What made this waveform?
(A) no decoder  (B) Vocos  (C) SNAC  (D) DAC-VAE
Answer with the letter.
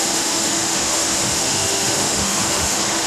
D